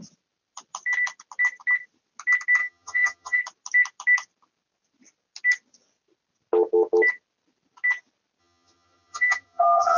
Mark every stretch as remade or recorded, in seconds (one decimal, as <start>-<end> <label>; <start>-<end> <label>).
0.0-2.6 recorded; 2.6-3.4 remade; 3.4-8.4 recorded; 8.4-10.0 remade